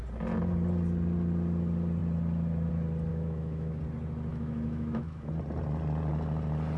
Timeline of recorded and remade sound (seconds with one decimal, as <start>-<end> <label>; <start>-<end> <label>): 0.0-3.1 recorded; 3.1-3.8 remade; 3.8-4.3 recorded; 4.3-5.3 remade; 5.3-6.8 recorded